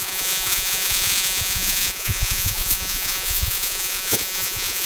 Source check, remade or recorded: remade